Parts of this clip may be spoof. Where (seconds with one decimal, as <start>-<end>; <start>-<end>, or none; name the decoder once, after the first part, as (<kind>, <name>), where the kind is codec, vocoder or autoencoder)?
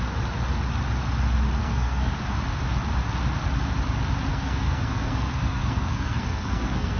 1.6-2.1 (codec, SNAC); 4.3-7.0